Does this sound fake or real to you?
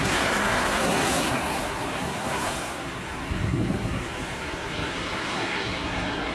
fake